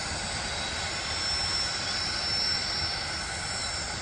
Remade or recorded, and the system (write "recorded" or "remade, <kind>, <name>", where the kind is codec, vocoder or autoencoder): recorded